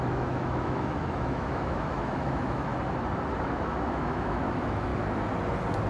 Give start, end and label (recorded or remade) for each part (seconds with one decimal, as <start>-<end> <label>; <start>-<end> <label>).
0.0-2.7 remade; 2.7-3.4 recorded; 3.4-4.9 remade; 4.9-5.9 recorded